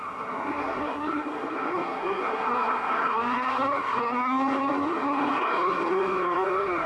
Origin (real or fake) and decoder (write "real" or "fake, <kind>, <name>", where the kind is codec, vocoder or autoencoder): fake, codec, SNAC